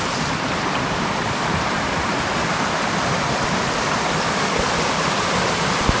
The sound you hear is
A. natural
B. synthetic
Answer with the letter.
B